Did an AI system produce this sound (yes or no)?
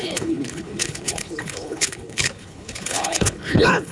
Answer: yes